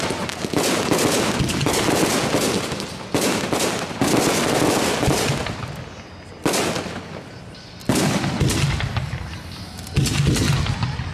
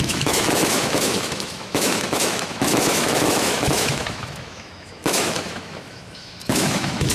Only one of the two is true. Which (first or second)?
first